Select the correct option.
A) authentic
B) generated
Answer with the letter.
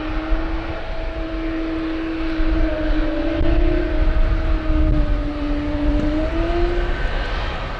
A